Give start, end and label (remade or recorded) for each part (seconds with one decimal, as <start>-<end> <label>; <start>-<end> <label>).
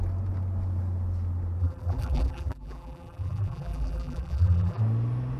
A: 0.0-1.6 recorded; 1.6-4.8 remade; 4.8-5.4 recorded